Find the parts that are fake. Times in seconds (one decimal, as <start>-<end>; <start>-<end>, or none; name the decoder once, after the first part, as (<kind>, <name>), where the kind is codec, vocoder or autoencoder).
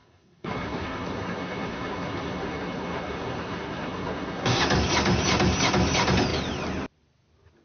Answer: 0.0-4.6 (codec, SNAC)